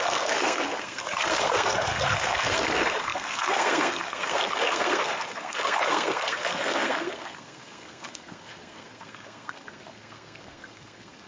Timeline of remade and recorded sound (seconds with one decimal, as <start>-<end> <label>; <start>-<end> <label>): 0.0-11.3 remade